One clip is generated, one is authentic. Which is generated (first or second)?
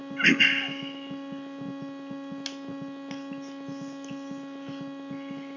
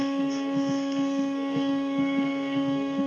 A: second